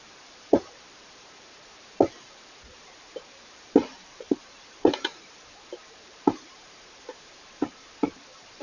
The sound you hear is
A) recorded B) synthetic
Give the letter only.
B